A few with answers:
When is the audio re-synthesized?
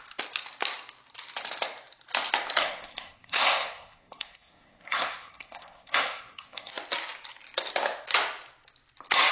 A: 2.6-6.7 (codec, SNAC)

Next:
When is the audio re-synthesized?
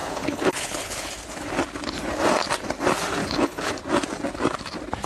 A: 0.0-1.1 (codec, HILCodec); 3.2-3.7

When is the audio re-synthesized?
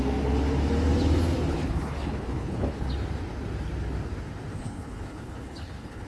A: 1.5-2.9 (codec, HILCodec); 4.5-6.1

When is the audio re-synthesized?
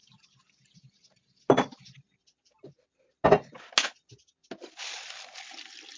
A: none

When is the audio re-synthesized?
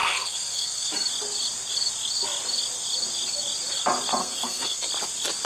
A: 0.0-0.9 (codec, SNAC); 4.2-4.9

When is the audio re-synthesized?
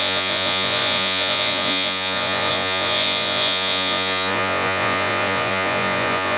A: 0.0-6.4 (vocoder, Vocos)